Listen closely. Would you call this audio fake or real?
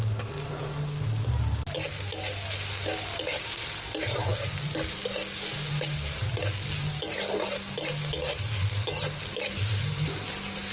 real